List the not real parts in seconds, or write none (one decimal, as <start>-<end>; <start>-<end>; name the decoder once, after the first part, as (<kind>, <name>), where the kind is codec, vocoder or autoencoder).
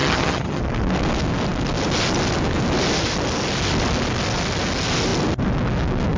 0.0-0.6 (vocoder, HiFi-GAN)